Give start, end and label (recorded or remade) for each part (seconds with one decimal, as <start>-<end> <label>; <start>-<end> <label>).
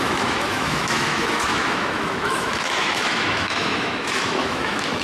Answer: 0.0-5.0 remade